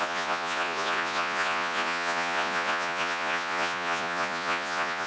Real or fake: fake